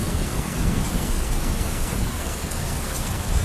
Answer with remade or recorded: remade